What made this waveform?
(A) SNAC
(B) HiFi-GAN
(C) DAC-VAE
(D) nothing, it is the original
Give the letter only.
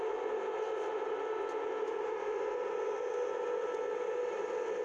D